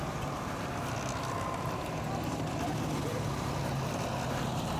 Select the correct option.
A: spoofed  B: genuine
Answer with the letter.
B